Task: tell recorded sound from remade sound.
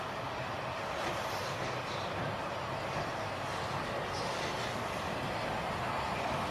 recorded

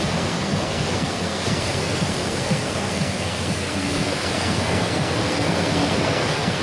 remade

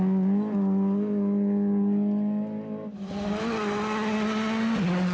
recorded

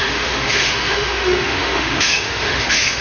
remade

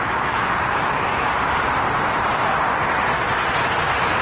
recorded